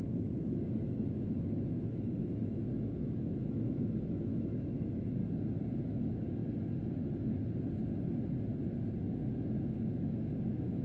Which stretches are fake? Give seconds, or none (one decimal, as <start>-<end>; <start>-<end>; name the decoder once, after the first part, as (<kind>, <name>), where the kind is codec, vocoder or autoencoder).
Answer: 0.0-5.2 (autoencoder, DAC-VAE); 5.8-6.4; 9.1-10.8